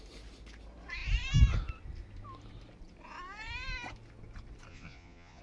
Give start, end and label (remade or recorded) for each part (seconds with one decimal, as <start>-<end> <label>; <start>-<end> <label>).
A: 0.0-4.7 recorded; 4.7-5.4 remade